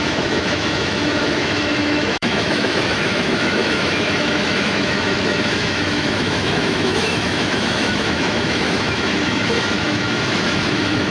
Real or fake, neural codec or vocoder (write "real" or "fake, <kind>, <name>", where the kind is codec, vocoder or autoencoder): fake, autoencoder, DAC-VAE